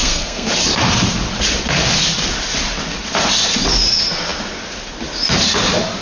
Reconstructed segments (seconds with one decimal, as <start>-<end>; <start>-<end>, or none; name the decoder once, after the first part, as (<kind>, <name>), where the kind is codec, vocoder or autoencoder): 0.0-0.5 (codec, SNAC)